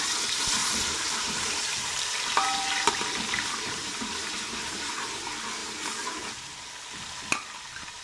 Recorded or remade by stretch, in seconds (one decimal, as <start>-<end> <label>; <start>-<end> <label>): 0.0-0.6 recorded; 0.6-4.9 remade; 4.9-5.6 recorded; 5.6-6.7 remade; 6.7-8.0 recorded